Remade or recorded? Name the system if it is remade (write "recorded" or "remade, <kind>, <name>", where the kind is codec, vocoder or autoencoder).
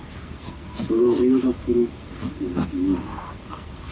remade, codec, SNAC